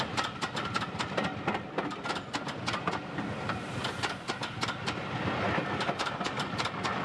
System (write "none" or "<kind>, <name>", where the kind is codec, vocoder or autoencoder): none